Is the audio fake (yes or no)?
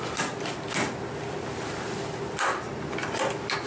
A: no